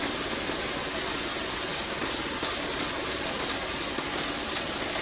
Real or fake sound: real